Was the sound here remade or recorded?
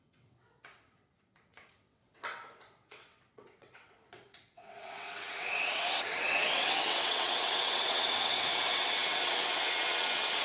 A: remade